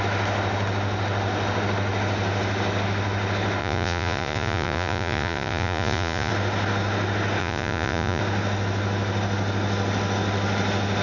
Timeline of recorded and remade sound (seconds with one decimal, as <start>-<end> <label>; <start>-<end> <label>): 0.0-3.6 recorded; 3.6-6.3 remade; 6.3-7.4 recorded; 7.4-8.2 remade; 8.2-11.0 recorded